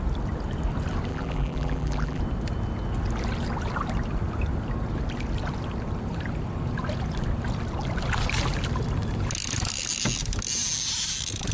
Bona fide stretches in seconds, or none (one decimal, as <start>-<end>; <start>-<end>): 0.0-1.1; 2.2-11.5